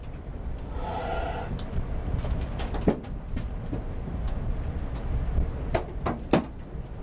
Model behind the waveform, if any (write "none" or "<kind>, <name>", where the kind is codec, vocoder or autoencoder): none